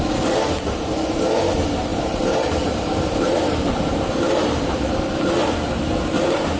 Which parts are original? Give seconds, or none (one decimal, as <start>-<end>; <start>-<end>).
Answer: 0.0-1.9; 5.0-6.6